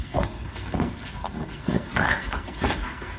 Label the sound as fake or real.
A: fake